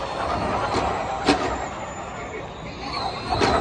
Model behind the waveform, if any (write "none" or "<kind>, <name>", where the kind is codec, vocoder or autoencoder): none